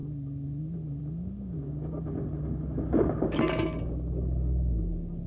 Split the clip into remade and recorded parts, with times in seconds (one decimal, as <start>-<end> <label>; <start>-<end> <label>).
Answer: 0.0-5.3 recorded